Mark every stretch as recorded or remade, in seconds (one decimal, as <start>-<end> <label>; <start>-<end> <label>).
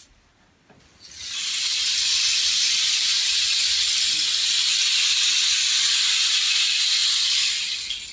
0.0-8.1 recorded